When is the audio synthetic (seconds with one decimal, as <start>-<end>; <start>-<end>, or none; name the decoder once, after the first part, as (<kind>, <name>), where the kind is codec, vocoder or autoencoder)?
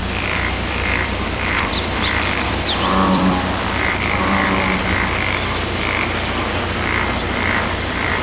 0.0-3.8 (vocoder, BigVGAN v2)